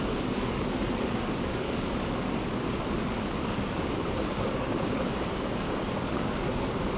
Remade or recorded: remade